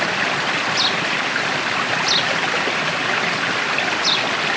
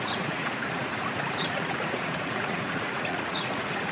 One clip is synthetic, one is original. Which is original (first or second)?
first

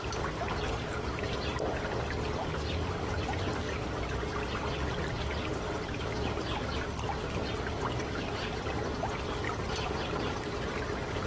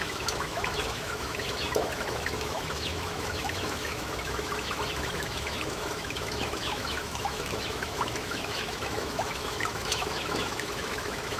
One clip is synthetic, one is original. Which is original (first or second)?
first